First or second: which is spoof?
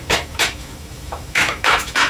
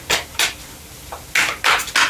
first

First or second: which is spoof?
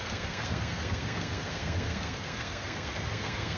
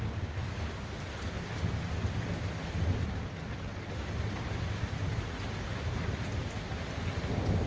first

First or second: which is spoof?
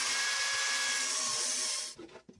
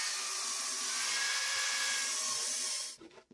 second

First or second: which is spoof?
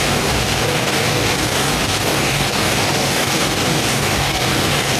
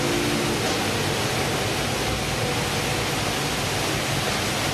first